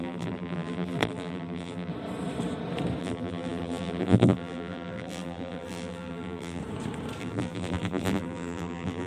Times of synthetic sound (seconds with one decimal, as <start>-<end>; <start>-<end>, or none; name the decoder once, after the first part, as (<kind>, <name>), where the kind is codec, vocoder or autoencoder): 0.0-1.9 (vocoder, BigVGAN v2); 3.0-6.6; 7.2-9.1